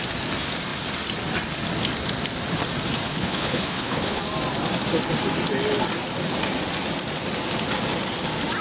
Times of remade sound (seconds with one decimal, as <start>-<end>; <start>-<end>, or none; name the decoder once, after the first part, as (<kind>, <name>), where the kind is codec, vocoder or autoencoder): 3.1-4.2 (codec, HILCodec)